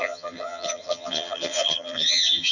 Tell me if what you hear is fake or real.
fake